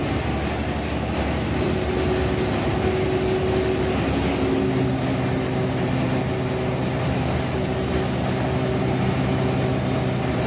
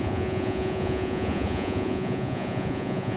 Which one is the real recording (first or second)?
first